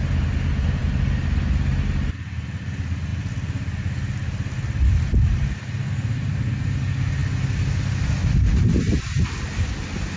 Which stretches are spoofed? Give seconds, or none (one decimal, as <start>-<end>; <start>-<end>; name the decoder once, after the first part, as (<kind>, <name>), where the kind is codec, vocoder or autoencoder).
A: none